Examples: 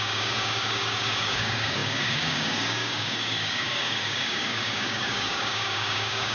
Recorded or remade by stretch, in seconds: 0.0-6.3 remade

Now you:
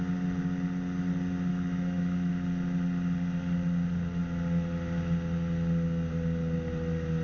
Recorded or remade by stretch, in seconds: 0.0-1.5 recorded; 1.5-2.3 remade; 2.3-7.2 recorded

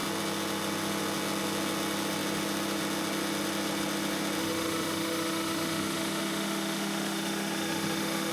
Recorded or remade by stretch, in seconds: 0.0-4.4 recorded; 4.4-8.3 remade

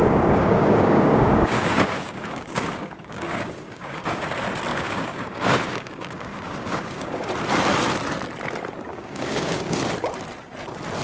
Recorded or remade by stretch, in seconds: 0.0-4.2 remade; 4.2-4.7 recorded; 4.7-7.3 remade; 7.3-8.9 recorded; 8.9-9.8 remade; 9.8-11.0 recorded

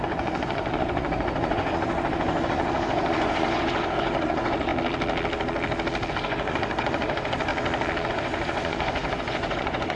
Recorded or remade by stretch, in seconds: 0.0-4.7 remade; 4.7-6.1 recorded; 6.1-7.5 remade; 7.5-8.1 recorded; 8.1-10.0 remade

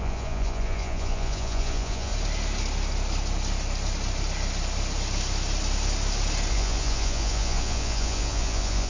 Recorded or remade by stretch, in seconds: 0.0-2.1 remade; 2.1-6.5 recorded; 6.5-8.9 remade

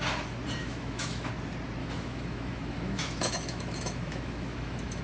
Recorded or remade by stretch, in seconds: 0.0-0.6 recorded; 0.6-1.3 remade; 1.3-1.8 recorded; 1.8-5.0 remade

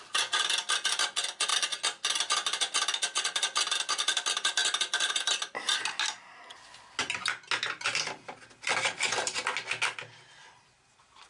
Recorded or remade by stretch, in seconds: 0.0-11.3 recorded